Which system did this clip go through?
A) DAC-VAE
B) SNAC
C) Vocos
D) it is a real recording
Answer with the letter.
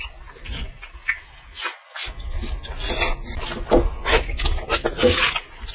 D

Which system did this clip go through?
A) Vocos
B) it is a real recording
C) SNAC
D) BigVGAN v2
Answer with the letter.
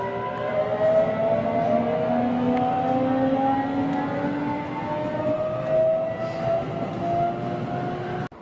B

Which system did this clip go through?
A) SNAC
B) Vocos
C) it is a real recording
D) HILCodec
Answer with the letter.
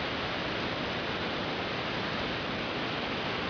C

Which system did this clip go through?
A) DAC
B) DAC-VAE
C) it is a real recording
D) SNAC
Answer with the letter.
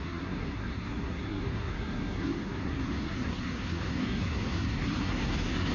D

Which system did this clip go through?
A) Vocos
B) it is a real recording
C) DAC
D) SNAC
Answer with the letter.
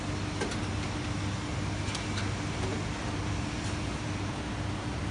B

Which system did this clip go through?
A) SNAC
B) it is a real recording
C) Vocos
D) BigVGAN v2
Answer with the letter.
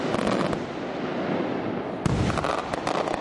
B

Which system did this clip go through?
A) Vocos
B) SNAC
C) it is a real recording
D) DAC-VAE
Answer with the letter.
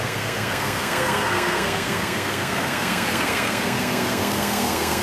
B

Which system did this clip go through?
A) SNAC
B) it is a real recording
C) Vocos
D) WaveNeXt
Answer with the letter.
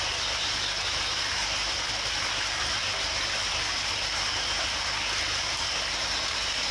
B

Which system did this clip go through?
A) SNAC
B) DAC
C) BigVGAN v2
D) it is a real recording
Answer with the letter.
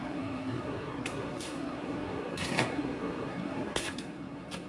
A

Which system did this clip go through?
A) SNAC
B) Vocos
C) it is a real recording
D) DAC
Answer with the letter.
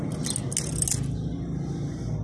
C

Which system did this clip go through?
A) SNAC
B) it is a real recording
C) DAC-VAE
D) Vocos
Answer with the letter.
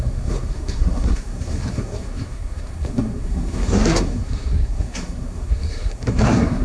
A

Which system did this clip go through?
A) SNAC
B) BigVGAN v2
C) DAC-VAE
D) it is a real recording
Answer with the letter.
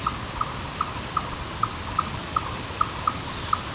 D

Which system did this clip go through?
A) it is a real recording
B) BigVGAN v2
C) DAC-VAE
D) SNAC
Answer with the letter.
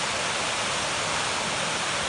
A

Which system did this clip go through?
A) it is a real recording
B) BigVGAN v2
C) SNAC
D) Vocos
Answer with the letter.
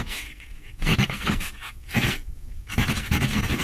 C